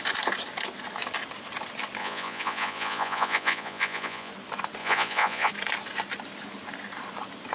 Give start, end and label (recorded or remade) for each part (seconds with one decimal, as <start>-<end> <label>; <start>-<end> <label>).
0.0-2.0 recorded; 2.0-4.3 remade; 4.3-4.8 recorded; 4.8-5.5 remade; 5.5-7.5 recorded